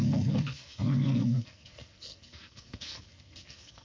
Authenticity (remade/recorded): remade